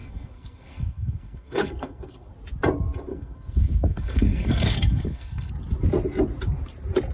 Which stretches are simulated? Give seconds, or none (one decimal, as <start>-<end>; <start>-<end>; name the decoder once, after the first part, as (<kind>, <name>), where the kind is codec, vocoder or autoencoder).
0.0-2.3 (codec, SNAC); 3.1-5.5